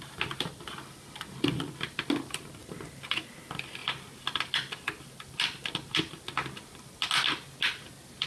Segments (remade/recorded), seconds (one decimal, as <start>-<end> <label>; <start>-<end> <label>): 0.0-8.3 recorded